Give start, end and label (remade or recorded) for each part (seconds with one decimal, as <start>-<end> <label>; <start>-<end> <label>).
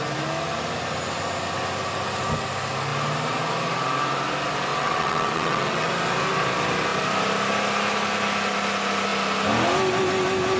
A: 0.0-4.7 recorded; 4.7-5.9 remade; 5.9-10.6 recorded